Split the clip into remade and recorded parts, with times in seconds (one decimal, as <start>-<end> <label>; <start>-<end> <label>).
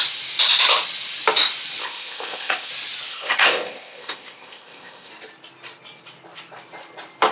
0.0-1.8 recorded; 1.8-2.7 remade; 2.7-3.1 recorded; 3.1-5.1 remade; 5.1-7.3 recorded